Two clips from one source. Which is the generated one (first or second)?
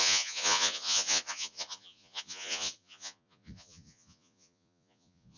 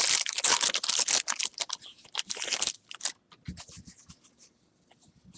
first